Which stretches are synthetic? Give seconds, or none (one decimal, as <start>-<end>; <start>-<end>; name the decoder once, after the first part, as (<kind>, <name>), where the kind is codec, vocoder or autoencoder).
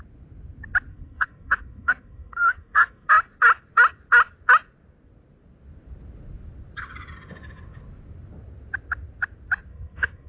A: 0.9-3.1 (codec, SNAC); 9.7-10.3